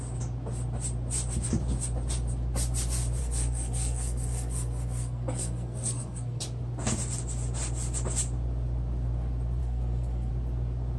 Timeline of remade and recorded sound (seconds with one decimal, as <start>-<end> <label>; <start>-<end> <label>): 0.0-3.2 recorded; 3.2-6.4 remade; 6.4-9.6 recorded; 9.6-10.3 remade; 10.3-11.0 recorded